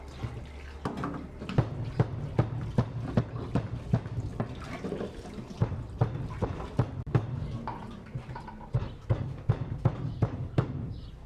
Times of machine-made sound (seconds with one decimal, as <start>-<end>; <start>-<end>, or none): 6.0-10.9